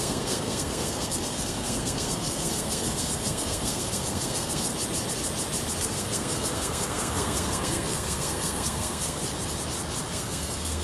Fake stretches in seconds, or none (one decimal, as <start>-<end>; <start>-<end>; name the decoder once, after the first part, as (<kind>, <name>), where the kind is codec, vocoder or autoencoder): 0.0-4.7 (codec, SNAC); 5.8-9.2; 10.1-10.8